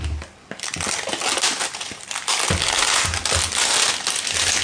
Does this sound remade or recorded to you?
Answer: recorded